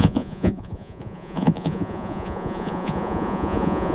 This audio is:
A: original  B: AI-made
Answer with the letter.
B